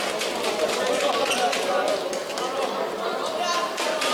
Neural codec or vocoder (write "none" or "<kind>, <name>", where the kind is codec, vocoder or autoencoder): none